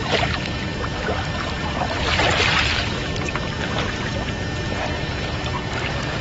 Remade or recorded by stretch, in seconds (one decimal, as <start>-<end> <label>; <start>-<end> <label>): 0.0-0.7 recorded; 0.7-2.6 remade; 2.6-6.2 recorded